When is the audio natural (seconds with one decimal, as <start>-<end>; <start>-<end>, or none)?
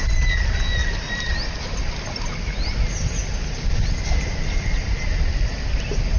0.0-6.2